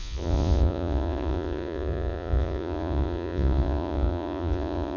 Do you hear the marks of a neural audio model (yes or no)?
yes